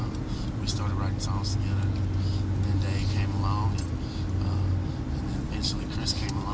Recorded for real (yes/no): yes